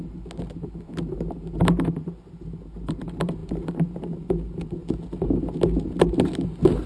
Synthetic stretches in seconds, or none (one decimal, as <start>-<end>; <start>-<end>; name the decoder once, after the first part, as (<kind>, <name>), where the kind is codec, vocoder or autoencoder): none